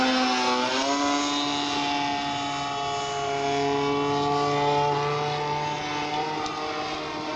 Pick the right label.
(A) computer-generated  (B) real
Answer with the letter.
B